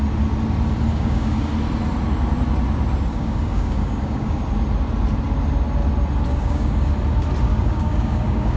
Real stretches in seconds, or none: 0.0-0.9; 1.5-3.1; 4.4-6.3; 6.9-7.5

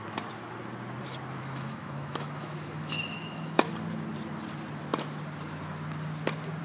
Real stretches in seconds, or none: 0.0-1.4; 3.7-6.6